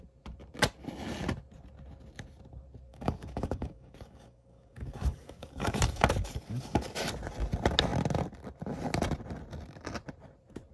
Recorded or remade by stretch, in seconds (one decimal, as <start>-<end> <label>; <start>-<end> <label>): 0.0-2.9 recorded; 2.9-6.9 remade; 6.9-10.7 recorded